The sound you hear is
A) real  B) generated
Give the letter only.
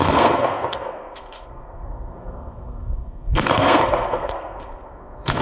B